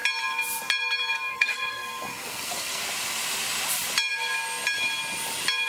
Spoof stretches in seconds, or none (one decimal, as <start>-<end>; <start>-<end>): 1.3-2.8